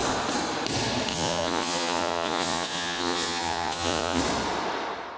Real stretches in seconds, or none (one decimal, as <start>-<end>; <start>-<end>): 0.0-1.1; 4.2-5.2